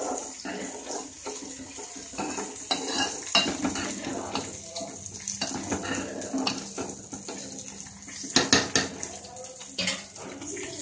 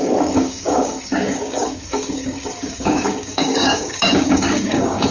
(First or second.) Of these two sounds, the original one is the first